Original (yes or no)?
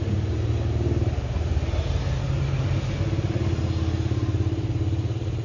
yes